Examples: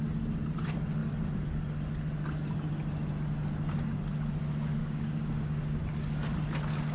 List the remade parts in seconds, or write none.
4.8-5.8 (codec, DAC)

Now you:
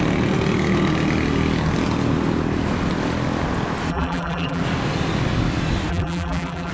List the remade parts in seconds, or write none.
3.9-4.6 (vocoder, BigVGAN v2); 5.9-6.7

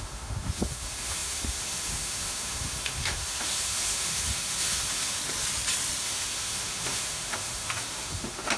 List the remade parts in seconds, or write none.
0.0-5.2 (autoencoder, DAC-VAE); 6.0-8.6

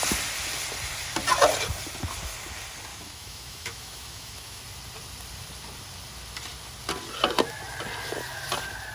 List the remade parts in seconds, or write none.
2.9-4.6 (autoencoder, DAC-VAE)

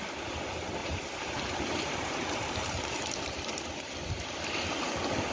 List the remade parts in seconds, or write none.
0.8-3.0 (vocoder, BigVGAN v2)

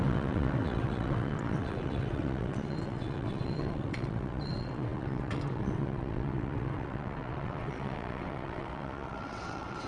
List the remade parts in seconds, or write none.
0.0-9.9 (vocoder, WaveNeXt)